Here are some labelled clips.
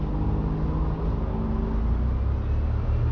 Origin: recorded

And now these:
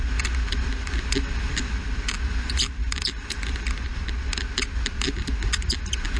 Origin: recorded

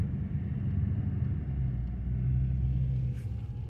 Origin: recorded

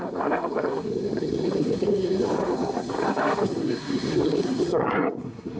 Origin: remade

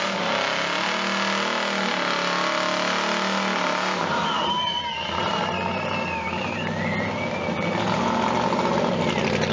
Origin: recorded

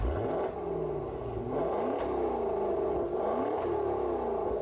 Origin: recorded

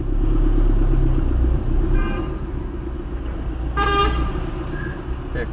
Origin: recorded